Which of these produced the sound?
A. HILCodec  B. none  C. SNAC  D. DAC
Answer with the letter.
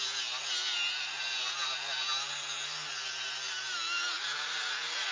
B